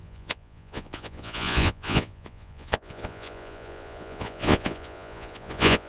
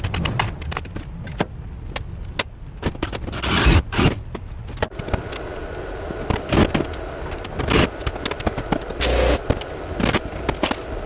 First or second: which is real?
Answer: second